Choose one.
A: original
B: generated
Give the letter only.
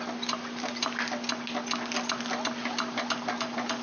A